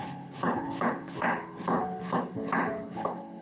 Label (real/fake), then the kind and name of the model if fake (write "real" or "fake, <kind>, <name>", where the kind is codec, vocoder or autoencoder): fake, codec, HILCodec